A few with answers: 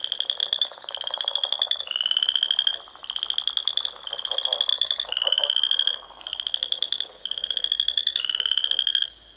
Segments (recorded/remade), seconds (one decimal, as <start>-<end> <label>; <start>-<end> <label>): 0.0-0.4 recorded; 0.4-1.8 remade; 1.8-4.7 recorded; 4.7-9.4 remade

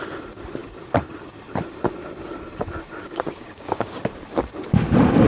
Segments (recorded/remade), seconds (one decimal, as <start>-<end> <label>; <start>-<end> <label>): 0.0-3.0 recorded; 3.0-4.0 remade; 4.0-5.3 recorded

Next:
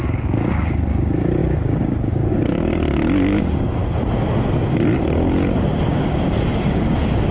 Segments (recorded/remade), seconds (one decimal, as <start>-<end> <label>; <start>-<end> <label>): 0.0-2.7 remade; 2.7-3.4 recorded; 3.4-3.8 remade; 3.8-5.9 recorded; 5.9-7.3 remade